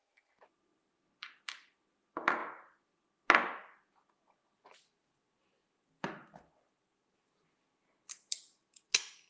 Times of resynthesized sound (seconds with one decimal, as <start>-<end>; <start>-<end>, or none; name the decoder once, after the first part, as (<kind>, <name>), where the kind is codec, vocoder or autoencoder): none